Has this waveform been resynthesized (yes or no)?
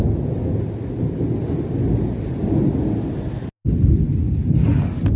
no